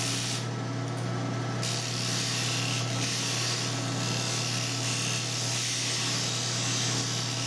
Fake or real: real